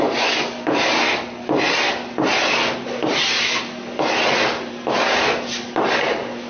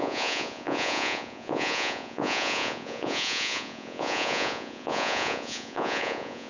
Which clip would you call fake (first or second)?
second